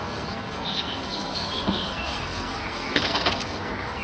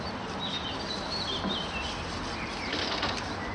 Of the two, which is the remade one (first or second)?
first